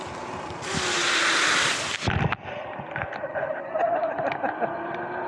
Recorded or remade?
recorded